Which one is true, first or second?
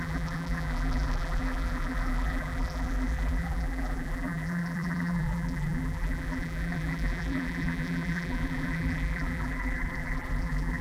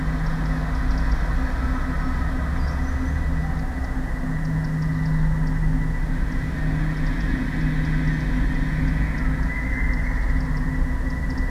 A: second